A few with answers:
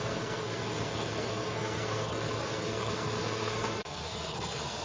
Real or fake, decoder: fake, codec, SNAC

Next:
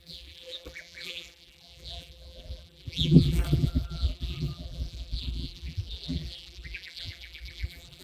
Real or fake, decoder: fake, vocoder, BigVGAN v2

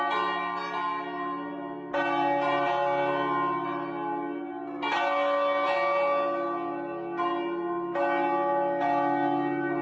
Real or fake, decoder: real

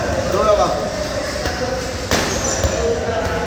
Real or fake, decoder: real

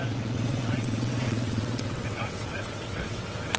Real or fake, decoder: fake, vocoder, WaveNeXt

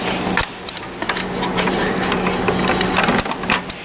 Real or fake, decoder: real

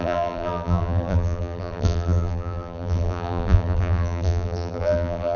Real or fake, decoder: fake, vocoder, BigVGAN v2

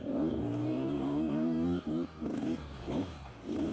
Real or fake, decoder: fake, codec, DAC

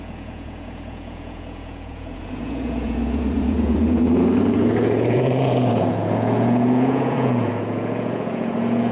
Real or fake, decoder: fake, vocoder, Vocos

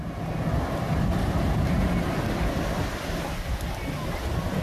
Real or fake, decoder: real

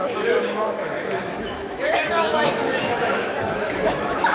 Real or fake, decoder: fake, autoencoder, DAC-VAE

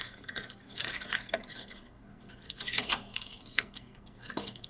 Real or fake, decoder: fake, codec, SNAC